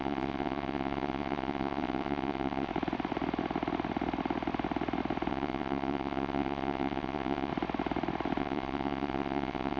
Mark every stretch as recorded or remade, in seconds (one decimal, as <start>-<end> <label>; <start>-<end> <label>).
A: 0.0-2.7 remade; 2.7-5.3 recorded; 5.3-7.5 remade; 7.5-8.4 recorded; 8.4-9.8 remade